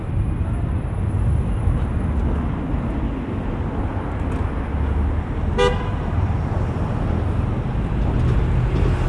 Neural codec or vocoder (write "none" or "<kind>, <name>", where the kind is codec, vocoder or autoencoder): none